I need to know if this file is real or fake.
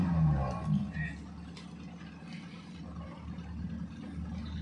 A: real